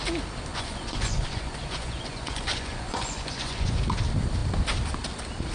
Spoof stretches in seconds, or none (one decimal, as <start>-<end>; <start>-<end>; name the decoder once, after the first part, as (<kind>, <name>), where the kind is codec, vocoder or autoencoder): 0.5-3.8 (vocoder, Vocos)

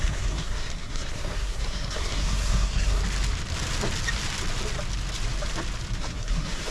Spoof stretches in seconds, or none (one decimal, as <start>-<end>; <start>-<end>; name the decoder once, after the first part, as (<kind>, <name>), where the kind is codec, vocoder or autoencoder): 0.0-3.0 (codec, SNAC); 6.0-6.7